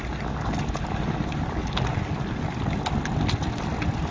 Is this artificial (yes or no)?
no